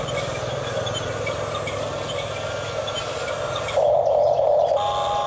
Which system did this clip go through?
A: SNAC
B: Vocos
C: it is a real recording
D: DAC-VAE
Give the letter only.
C